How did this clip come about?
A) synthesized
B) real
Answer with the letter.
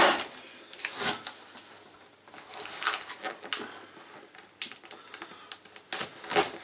B